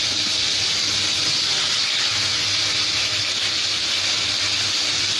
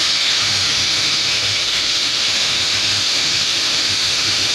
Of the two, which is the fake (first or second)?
second